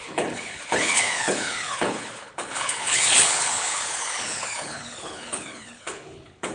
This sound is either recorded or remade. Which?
remade